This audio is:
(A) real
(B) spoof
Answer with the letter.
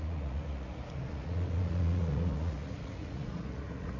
B